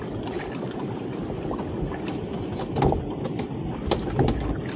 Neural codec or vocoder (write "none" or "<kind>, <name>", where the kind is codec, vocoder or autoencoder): none